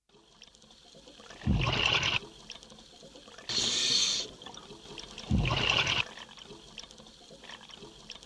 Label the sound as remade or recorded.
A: recorded